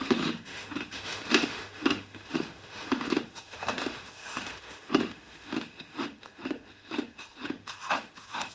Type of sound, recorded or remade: remade